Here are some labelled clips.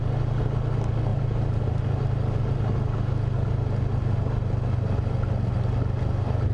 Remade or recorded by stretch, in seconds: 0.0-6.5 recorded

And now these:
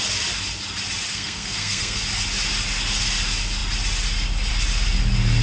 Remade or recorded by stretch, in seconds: 0.0-1.1 recorded; 1.1-2.0 remade; 2.0-5.4 recorded

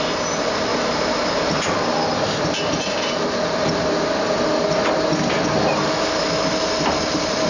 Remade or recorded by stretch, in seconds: 0.0-0.7 recorded; 0.7-4.4 remade; 4.4-7.5 recorded

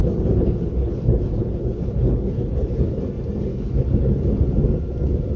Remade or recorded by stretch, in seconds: 0.0-3.0 remade; 3.0-3.5 recorded; 3.5-4.1 remade; 4.1-5.4 recorded

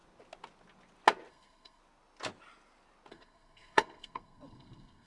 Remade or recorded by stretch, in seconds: 0.0-1.3 recorded; 1.3-1.8 remade; 1.8-3.1 recorded; 3.1-5.1 remade

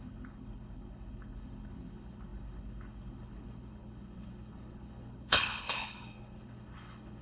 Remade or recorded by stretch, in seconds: 0.0-7.2 remade

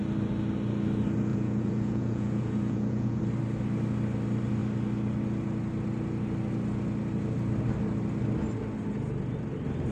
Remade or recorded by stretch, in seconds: 0.0-1.3 recorded; 1.3-3.2 remade; 3.2-9.9 recorded